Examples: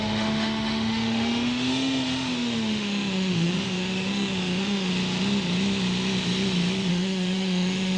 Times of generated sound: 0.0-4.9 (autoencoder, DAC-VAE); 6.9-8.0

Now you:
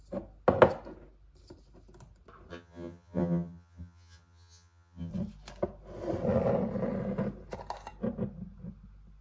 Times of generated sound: 2.5-5.1 (vocoder, HiFi-GAN)

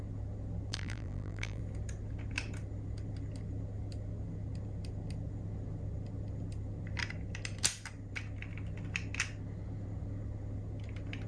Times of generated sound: 0.7-1.6 (vocoder, BigVGAN v2)

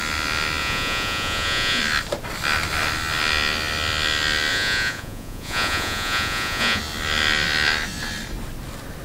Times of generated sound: 0.6-1.8 (vocoder, Vocos); 4.5-6.8

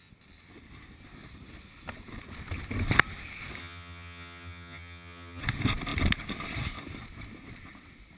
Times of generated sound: 3.6-5.4 (vocoder, HiFi-GAN)

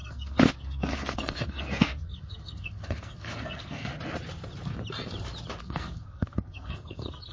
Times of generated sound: 0.0-3.9 (codec, SNAC); 5.6-7.3

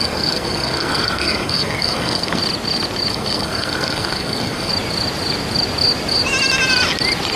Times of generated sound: 0.0-2.4 (codec, SNAC); 3.1-4.7